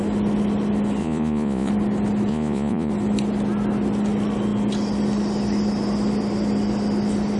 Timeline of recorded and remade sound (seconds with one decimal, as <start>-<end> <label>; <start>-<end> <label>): 0.0-1.0 recorded; 1.0-1.7 remade; 1.7-2.3 recorded; 2.3-2.9 remade; 2.9-7.4 recorded